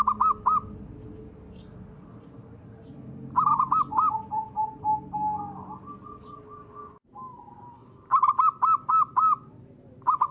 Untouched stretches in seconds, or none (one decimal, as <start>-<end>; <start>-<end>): 0.0-10.3